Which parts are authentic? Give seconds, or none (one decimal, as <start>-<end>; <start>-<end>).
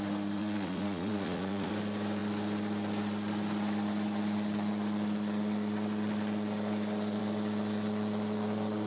0.0-0.4; 1.7-8.9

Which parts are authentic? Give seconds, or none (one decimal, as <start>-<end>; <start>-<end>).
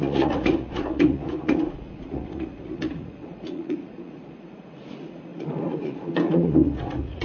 none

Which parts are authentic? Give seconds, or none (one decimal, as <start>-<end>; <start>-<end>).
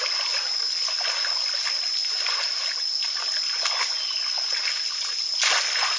0.0-6.0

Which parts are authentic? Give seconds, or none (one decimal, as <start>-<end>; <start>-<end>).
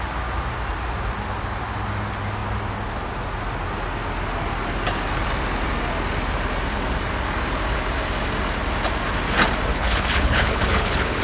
0.0-9.7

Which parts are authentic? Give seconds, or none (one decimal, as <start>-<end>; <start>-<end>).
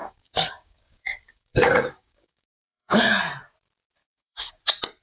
3.0-4.1; 4.6-5.0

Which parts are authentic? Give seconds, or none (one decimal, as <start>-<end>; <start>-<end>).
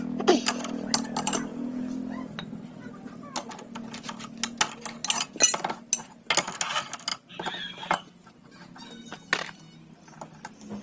0.0-10.8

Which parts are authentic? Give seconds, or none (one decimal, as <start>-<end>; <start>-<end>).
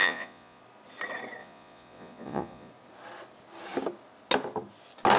0.6-1.4; 2.7-5.2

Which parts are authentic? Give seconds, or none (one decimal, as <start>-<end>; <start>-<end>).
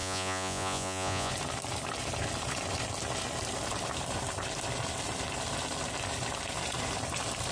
1.3-7.5